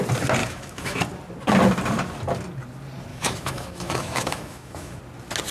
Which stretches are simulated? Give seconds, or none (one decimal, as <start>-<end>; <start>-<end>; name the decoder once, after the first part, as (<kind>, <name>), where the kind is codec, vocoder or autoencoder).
0.4-1.0 (autoencoder, DAC-VAE); 3.1-5.0